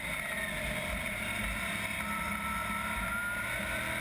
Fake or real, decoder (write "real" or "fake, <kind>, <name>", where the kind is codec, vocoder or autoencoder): real